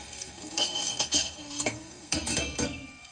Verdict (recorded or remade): remade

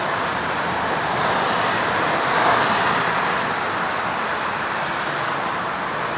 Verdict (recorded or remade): recorded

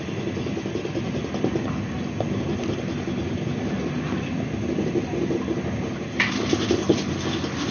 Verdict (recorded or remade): recorded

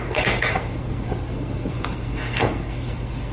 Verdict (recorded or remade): remade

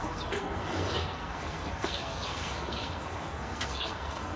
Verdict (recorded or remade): remade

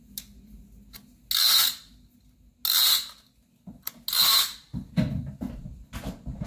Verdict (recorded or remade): recorded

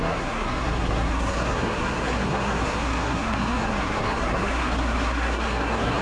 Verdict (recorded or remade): remade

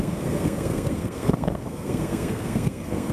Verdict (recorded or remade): remade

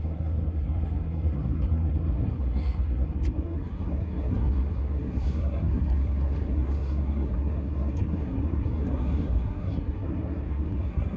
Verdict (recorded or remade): remade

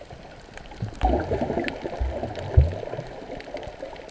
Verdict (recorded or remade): recorded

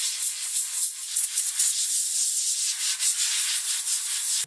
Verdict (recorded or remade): recorded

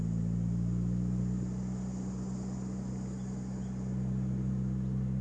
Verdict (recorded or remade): recorded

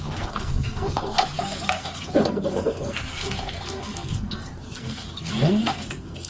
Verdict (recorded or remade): remade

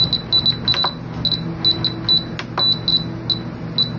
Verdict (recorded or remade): recorded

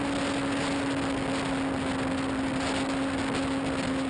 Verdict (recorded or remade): recorded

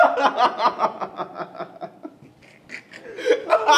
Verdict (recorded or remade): recorded